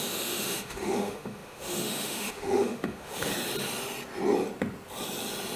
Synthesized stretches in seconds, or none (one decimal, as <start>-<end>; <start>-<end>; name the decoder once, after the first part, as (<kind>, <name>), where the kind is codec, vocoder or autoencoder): 0.0-3.3 (autoencoder, DAC-VAE)